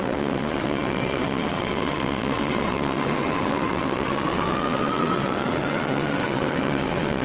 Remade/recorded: remade